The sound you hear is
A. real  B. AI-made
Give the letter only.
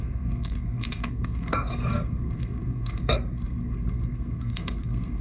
B